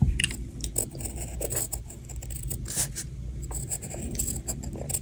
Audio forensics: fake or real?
real